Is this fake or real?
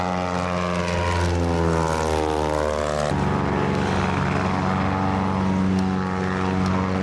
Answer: real